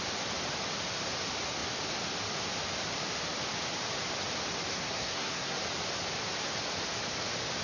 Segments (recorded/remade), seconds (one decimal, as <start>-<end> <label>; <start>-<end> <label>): 0.0-4.7 recorded; 4.7-5.6 remade; 5.6-7.6 recorded